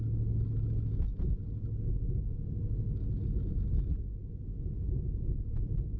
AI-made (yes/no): no